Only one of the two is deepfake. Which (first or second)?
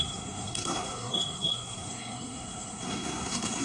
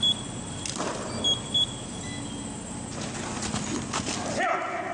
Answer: first